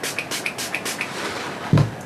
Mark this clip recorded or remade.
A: recorded